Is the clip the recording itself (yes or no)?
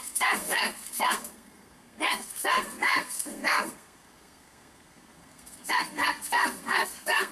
no